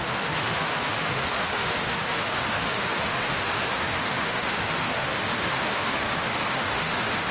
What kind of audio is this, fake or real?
fake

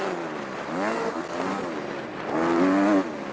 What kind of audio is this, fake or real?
real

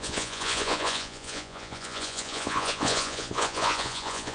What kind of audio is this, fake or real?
fake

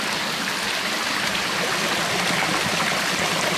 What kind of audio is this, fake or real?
real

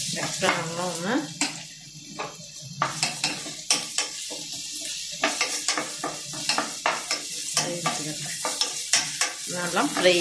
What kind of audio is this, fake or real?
fake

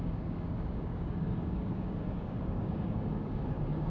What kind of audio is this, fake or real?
fake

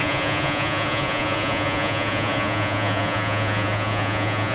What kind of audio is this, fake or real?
fake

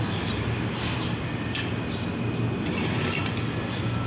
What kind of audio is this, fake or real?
real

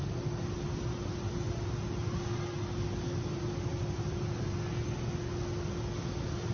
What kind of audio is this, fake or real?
real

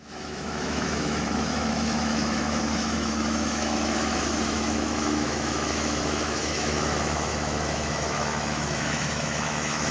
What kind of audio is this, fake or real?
fake